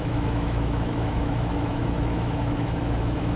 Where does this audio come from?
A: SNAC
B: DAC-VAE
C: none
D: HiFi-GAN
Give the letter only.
B